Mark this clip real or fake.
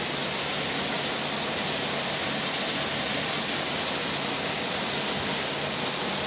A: real